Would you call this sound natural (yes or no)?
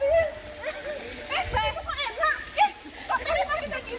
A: yes